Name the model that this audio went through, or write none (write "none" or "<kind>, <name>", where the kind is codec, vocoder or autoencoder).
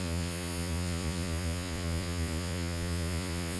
vocoder, Vocos